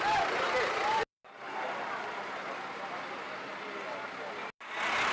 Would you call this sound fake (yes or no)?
no